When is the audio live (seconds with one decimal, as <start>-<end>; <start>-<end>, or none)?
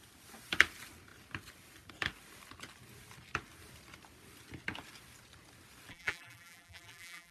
0.0-5.9